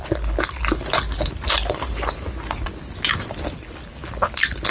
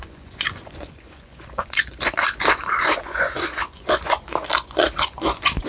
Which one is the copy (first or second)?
second